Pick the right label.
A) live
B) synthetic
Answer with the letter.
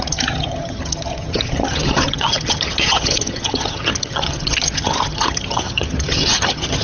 B